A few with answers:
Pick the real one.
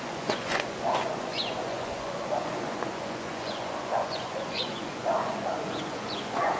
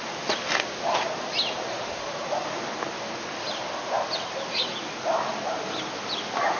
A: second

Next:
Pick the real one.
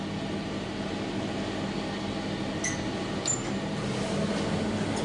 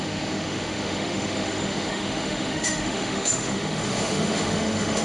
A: first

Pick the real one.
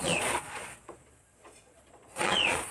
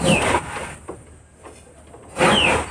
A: second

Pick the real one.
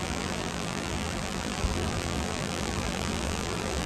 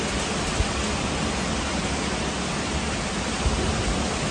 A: second